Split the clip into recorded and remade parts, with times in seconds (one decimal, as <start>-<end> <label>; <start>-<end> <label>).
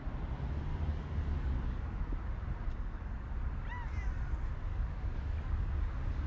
0.0-0.7 recorded; 0.7-2.0 remade; 2.0-2.7 recorded; 2.7-3.3 remade; 3.3-4.7 recorded; 4.7-6.3 remade